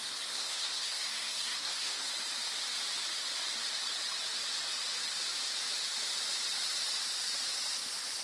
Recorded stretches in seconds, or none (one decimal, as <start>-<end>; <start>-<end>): 2.1-8.2